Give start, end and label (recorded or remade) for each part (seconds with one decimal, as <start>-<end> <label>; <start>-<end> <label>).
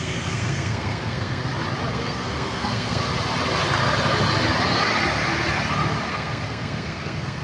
0.0-1.4 remade; 1.4-1.9 recorded; 1.9-3.0 remade; 3.0-6.1 recorded; 6.1-7.4 remade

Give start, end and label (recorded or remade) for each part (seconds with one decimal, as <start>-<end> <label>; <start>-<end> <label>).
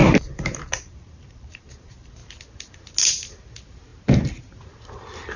0.0-2.1 remade; 2.1-5.4 recorded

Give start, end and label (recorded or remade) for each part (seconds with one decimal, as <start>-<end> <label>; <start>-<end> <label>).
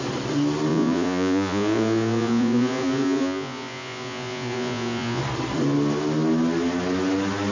0.0-0.7 recorded; 0.7-5.2 remade; 5.2-7.5 recorded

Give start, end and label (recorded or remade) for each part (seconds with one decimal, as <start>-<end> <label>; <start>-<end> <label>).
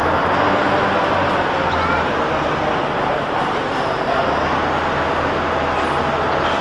0.0-6.6 recorded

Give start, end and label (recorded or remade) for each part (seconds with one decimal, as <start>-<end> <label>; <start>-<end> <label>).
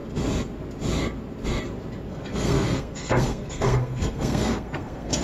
0.0-2.1 recorded; 2.1-5.2 remade